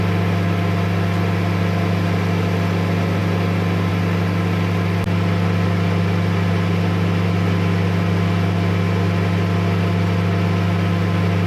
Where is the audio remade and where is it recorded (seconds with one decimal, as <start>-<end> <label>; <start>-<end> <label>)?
0.0-11.5 recorded